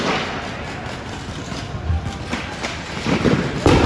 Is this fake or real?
real